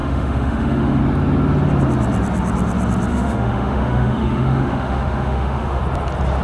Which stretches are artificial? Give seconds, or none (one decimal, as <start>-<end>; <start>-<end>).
0.0-1.0; 3.1-5.8